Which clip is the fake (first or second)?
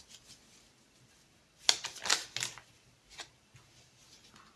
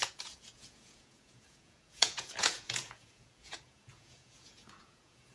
second